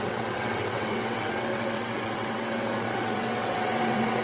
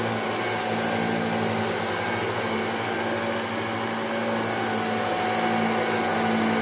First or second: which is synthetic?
first